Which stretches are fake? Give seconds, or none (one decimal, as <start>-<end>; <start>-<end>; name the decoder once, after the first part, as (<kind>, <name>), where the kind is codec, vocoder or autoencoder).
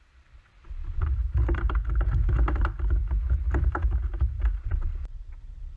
0.0-1.1 (vocoder, Vocos); 4.6-5.8